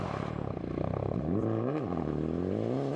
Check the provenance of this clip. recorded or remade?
recorded